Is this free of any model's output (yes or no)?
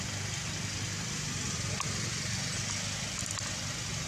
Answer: yes